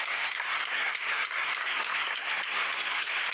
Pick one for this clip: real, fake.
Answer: fake